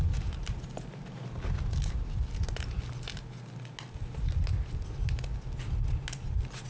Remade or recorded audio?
recorded